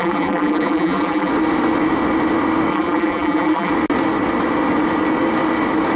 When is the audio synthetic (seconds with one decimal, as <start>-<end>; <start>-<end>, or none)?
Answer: 0.0-1.3; 2.7-3.7